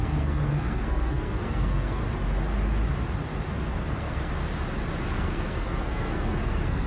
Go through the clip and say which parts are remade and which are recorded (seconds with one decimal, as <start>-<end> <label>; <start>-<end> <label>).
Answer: 0.0-2.0 remade; 2.0-3.7 recorded; 3.7-4.3 remade; 4.3-5.1 recorded; 5.1-6.9 remade